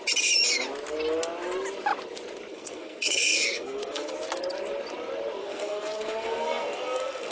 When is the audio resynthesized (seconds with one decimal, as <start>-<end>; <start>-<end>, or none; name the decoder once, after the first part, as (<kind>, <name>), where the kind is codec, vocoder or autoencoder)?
2.5-4.1 (codec, SNAC); 5.4-7.3